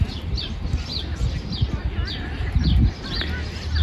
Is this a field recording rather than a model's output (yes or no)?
yes